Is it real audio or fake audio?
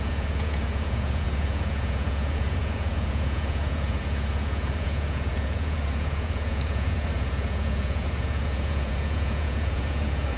fake